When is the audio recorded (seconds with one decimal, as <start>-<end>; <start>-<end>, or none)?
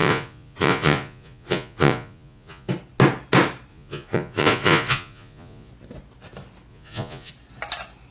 2.7-3.7; 5.7-6.7; 7.3-8.1